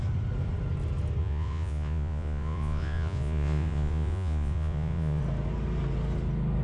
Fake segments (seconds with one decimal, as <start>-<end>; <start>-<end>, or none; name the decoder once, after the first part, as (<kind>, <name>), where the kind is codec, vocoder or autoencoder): 1.2-5.2 (vocoder, Vocos)

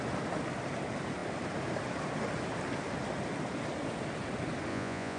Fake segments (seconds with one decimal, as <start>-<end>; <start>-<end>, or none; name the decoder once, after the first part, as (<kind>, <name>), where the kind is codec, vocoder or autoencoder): 4.7-5.2 (vocoder, Vocos)

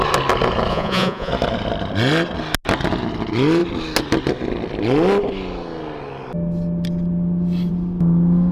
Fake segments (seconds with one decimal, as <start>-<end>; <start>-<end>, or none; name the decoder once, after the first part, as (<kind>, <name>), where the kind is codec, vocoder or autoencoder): 0.7-1.3 (vocoder, Vocos)

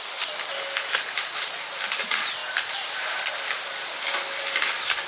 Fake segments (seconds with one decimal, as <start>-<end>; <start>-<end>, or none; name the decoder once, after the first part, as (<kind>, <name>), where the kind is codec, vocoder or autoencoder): 1.2-1.8 (vocoder, Vocos)